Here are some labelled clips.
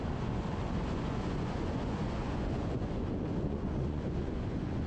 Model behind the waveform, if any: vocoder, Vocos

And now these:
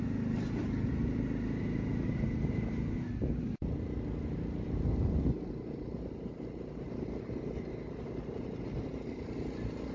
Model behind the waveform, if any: none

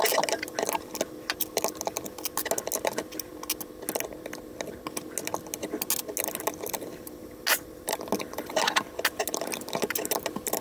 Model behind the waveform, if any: none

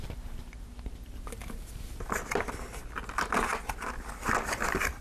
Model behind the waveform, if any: none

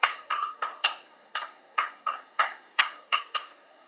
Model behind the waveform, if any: codec, SNAC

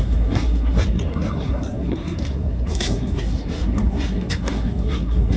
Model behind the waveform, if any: codec, SNAC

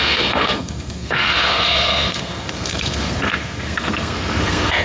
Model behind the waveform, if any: codec, SNAC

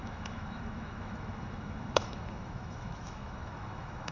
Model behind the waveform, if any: autoencoder, DAC-VAE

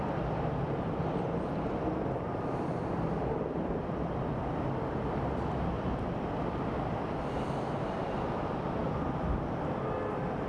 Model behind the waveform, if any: vocoder, BigVGAN v2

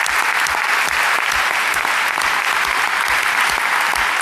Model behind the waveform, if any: none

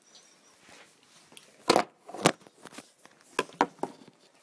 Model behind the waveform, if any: none